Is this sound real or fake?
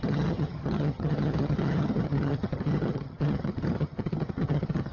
fake